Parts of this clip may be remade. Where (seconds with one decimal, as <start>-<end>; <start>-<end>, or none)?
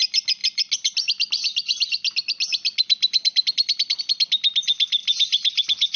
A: none